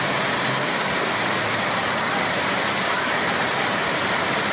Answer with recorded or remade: remade